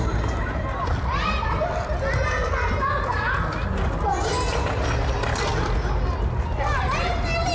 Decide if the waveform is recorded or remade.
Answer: recorded